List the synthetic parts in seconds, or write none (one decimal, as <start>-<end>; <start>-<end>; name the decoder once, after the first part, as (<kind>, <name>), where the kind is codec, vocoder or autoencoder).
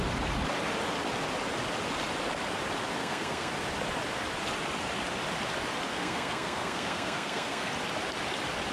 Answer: 3.0-3.5 (codec, SNAC); 5.9-7.7